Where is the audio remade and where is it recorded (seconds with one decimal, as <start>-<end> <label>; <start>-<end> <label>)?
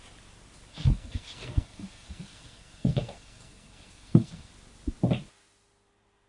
0.0-0.7 recorded; 0.7-4.5 remade; 4.5-6.3 recorded